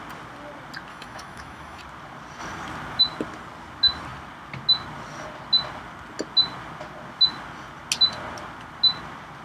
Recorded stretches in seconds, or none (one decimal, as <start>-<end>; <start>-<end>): 0.0-0.9; 1.8-9.4